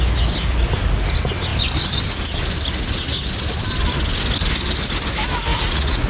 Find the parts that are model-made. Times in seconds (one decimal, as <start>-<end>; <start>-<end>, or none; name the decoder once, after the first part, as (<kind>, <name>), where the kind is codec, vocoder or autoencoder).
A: 5.5-6.1 (vocoder, Vocos)